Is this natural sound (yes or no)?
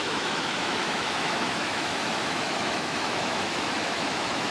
no